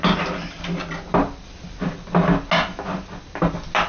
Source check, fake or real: real